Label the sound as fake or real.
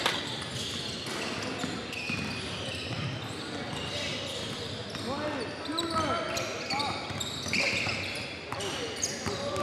real